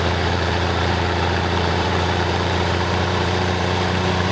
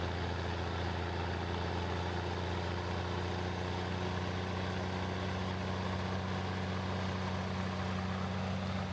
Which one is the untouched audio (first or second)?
second